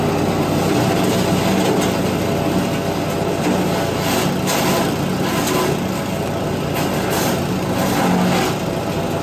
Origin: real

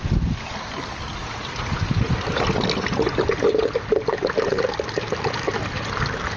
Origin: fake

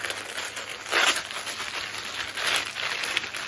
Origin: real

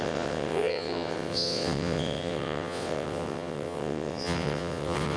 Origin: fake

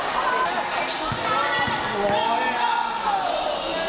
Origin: real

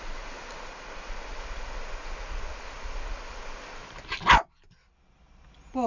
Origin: real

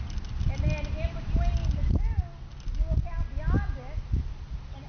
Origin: real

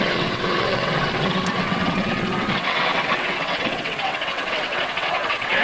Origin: fake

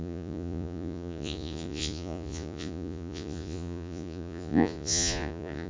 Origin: fake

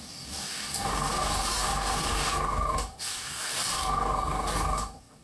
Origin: fake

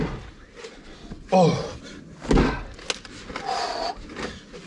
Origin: real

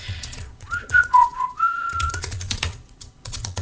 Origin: fake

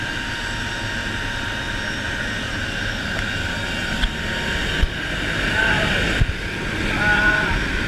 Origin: real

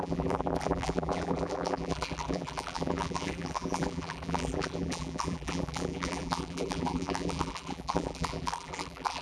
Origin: fake